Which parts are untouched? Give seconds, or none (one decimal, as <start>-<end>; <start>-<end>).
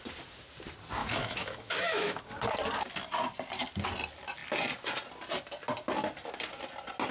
0.0-1.0; 2.2-7.1